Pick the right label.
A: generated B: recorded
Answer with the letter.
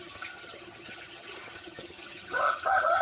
A